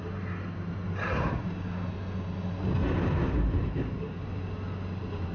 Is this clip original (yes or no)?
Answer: yes